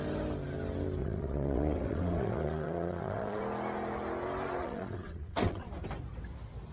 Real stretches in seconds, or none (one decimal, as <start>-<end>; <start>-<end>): 0.0-1.0; 3.4-4.6; 5.7-6.7